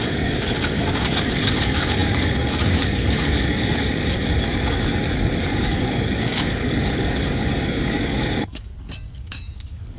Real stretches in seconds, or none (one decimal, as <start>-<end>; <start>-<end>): 8.7-9.2